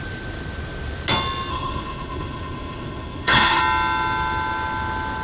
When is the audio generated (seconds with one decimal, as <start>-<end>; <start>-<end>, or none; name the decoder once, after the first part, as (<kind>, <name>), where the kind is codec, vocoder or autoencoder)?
1.5-3.6 (codec, HILCodec)